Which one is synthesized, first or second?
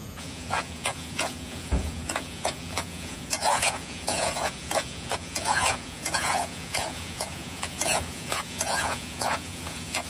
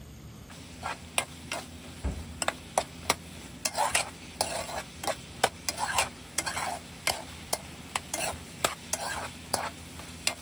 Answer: first